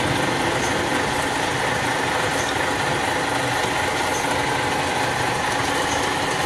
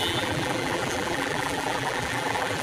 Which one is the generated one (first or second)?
second